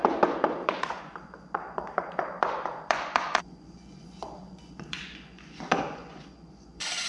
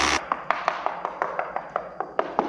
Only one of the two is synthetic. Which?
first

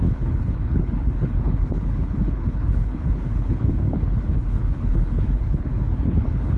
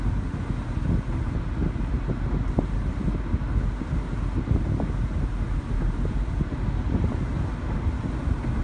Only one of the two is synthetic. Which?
first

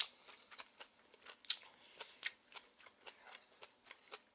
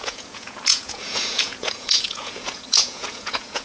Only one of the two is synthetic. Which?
second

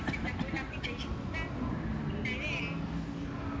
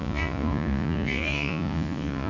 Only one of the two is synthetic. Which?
second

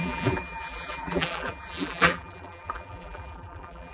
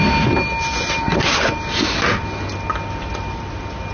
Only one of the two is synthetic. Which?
first